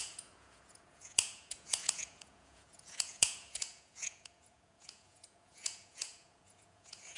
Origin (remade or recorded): remade